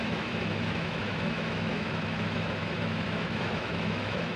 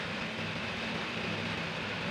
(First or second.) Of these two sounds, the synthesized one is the first